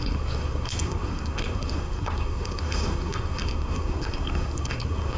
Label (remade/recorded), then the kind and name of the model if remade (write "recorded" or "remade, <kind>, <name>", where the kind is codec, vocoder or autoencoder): remade, codec, SNAC